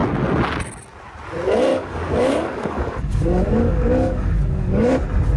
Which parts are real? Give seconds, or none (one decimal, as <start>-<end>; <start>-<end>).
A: 0.0-1.7; 4.9-5.4